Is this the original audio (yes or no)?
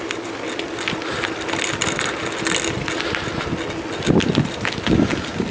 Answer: yes